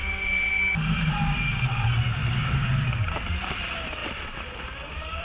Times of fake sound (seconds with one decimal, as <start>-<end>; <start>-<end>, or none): 2.2-2.7